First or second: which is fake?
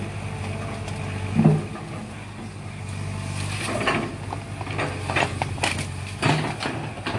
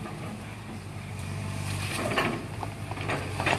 second